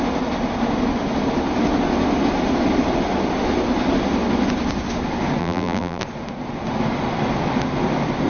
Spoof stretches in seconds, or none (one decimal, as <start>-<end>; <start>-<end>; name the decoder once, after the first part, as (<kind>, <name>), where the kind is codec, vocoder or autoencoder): 5.4-6.0 (vocoder, BigVGAN v2)